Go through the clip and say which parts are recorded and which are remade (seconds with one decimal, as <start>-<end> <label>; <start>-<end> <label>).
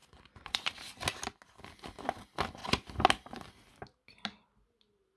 0.0-0.7 remade; 0.7-5.2 recorded